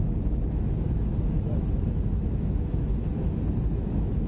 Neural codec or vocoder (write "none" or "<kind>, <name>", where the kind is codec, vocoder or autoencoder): autoencoder, DAC-VAE